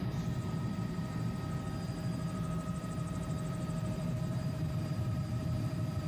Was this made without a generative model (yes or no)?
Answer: no